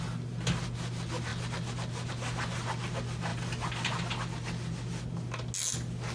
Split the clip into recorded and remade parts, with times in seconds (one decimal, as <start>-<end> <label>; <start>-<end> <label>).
0.0-6.1 recorded